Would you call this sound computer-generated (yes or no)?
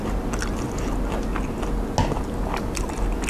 no